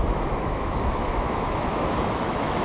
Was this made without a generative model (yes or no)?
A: no